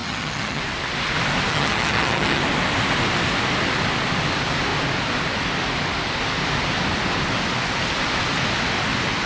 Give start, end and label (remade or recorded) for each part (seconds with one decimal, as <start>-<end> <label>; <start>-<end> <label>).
0.0-0.6 remade; 0.6-1.5 recorded; 1.5-2.4 remade; 2.4-9.3 recorded